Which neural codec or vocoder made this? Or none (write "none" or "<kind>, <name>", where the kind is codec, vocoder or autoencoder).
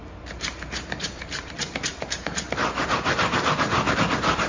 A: vocoder, BigVGAN v2